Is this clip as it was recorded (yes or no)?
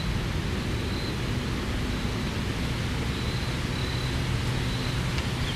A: yes